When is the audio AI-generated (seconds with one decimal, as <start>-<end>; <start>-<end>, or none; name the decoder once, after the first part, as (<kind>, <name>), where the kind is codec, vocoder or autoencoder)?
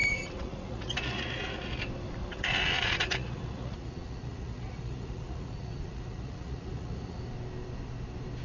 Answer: 0.0-1.8 (vocoder, Vocos); 2.2-7.2